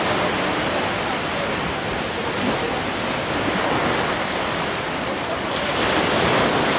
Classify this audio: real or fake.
real